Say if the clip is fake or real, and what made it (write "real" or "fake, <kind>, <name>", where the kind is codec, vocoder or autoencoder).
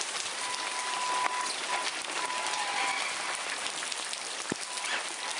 real